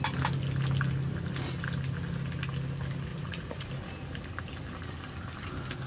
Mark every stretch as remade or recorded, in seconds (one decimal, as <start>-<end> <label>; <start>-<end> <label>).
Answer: 0.0-3.1 recorded; 3.1-3.7 remade; 3.7-5.9 recorded